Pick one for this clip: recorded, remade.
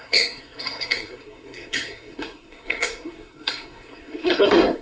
remade